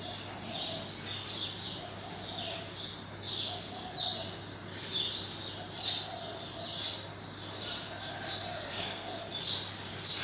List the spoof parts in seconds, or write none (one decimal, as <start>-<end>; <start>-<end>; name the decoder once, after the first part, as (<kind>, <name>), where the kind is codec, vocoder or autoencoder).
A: 8.7-9.2 (codec, SNAC)